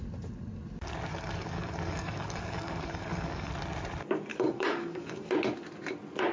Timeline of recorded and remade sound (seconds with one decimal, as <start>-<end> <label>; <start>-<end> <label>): 0.0-1.1 recorded; 1.1-3.5 remade; 3.5-4.3 recorded; 4.3-5.3 remade; 5.3-6.3 recorded